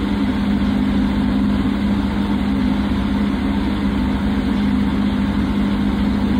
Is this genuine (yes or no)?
yes